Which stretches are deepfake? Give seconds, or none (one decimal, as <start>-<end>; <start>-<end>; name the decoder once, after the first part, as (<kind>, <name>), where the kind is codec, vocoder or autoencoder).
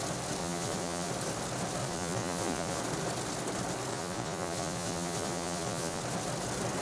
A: 0.4-1.1 (vocoder, Vocos); 1.8-2.8; 3.9-6.0